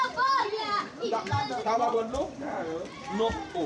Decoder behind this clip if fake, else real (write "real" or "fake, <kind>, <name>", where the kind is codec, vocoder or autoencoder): fake, vocoder, BigVGAN v2